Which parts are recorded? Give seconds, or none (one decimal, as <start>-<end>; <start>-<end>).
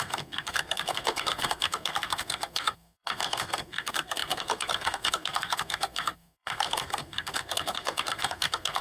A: none